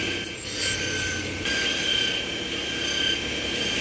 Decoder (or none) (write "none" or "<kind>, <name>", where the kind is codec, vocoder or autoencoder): none